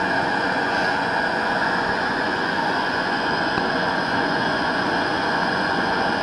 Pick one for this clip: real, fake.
fake